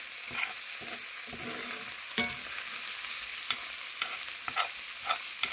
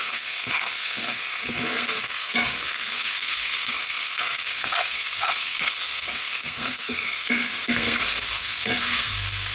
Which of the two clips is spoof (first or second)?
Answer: second